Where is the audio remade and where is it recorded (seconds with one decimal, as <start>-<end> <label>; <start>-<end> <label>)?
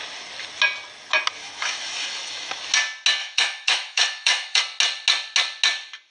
0.0-1.4 recorded; 1.4-2.6 remade; 2.6-3.2 recorded; 3.2-4.6 remade; 4.6-6.1 recorded